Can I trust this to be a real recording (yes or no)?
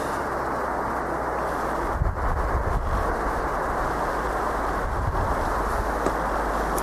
yes